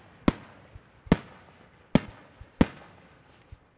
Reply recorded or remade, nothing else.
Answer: recorded